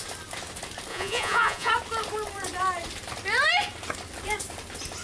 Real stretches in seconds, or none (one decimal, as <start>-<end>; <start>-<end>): 0.0-0.9; 1.7-5.0

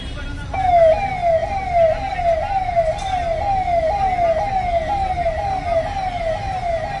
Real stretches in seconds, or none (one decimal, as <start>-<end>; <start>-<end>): 0.0-7.0